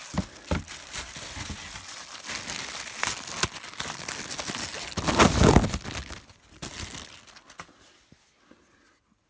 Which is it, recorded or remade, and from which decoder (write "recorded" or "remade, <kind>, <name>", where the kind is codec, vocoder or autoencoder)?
recorded